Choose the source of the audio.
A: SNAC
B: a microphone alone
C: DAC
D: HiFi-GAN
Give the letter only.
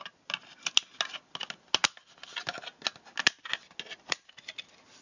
B